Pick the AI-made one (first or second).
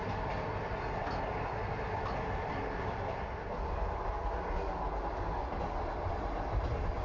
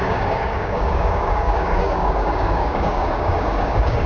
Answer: second